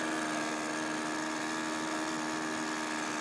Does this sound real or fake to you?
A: real